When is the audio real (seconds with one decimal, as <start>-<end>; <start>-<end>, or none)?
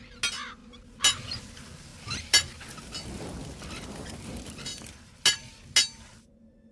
0.0-4.7; 5.2-6.7